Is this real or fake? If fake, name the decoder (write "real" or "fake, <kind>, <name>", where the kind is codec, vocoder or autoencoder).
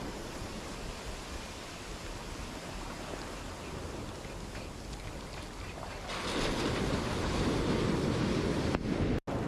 real